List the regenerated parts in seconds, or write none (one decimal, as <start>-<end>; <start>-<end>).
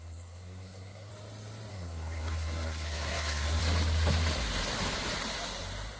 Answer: 0.0-1.1; 1.7-3.6